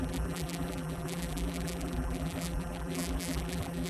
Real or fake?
fake